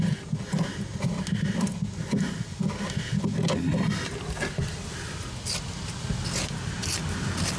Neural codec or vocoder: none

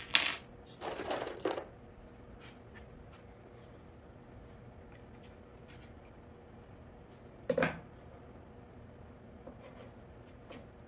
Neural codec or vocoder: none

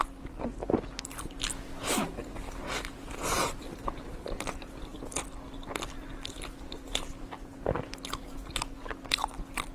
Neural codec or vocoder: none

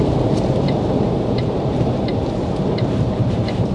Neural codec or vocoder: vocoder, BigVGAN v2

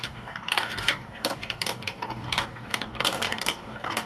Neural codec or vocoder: codec, DAC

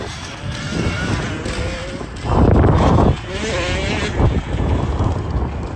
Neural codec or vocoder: none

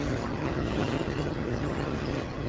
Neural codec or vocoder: vocoder, HiFi-GAN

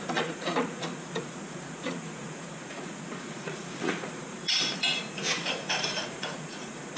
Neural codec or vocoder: vocoder, Vocos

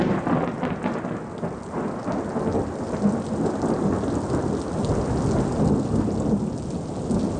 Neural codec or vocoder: none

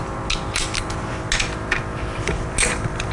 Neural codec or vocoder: none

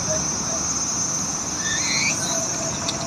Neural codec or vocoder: none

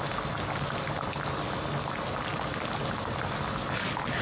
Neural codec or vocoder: none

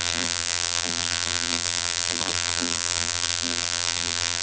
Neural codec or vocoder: vocoder, BigVGAN v2